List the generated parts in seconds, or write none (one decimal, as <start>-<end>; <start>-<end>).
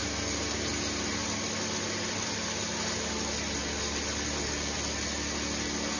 none